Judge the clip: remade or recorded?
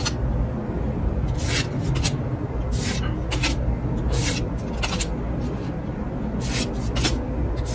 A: recorded